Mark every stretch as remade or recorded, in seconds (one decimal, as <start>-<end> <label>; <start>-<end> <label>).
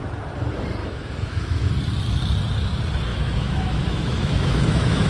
0.0-0.8 recorded; 0.8-1.7 remade; 1.7-3.1 recorded; 3.1-5.1 remade